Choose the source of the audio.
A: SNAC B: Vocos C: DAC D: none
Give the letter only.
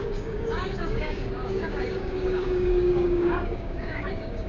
C